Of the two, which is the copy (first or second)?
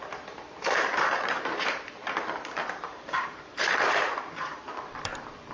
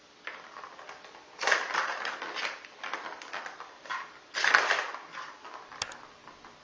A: first